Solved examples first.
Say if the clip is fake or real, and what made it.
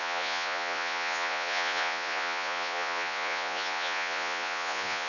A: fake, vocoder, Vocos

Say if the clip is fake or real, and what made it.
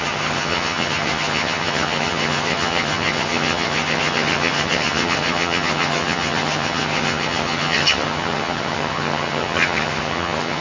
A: fake, vocoder, HiFi-GAN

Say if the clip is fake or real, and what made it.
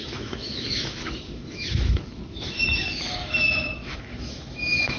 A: fake, autoencoder, DAC-VAE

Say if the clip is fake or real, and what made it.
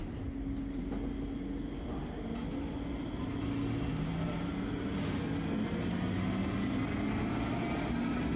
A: real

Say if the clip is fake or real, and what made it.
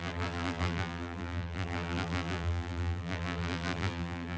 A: fake, vocoder, BigVGAN v2